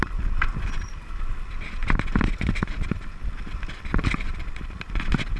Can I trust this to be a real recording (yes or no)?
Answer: yes